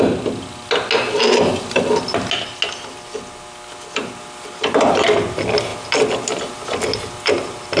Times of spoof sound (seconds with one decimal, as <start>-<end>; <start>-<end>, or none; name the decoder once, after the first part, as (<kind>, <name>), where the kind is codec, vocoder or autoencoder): none